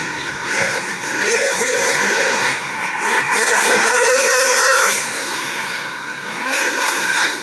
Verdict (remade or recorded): remade